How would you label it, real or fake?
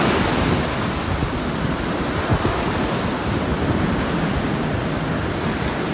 real